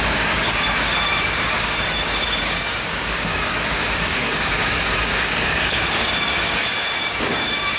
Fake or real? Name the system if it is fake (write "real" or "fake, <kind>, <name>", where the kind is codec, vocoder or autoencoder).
fake, codec, DAC